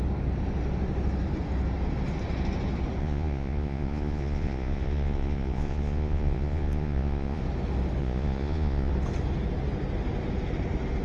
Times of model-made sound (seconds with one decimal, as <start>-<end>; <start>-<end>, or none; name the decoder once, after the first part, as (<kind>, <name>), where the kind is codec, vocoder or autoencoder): 3.0-7.4 (vocoder, Vocos); 8.0-8.9